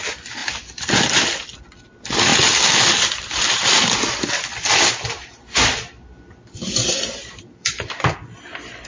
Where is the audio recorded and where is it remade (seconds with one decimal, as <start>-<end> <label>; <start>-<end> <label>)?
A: 0.0-0.4 recorded; 0.4-1.1 remade; 1.1-2.3 recorded; 2.3-3.6 remade; 3.6-7.2 recorded; 7.2-7.9 remade; 7.9-8.9 recorded